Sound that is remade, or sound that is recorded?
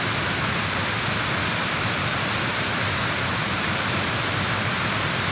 recorded